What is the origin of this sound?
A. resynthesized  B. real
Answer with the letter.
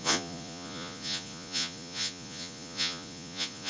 A